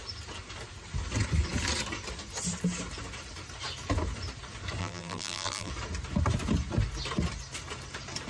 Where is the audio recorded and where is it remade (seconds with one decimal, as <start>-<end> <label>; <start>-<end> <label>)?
0.0-4.8 recorded; 4.8-5.7 remade; 5.7-8.3 recorded